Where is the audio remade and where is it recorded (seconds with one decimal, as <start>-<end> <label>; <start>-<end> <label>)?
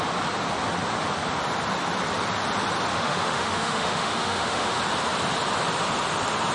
0.0-2.9 recorded; 2.9-4.8 remade; 4.8-6.5 recorded